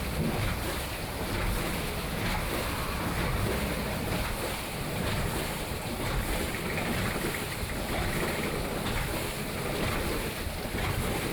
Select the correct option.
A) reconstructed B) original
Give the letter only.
B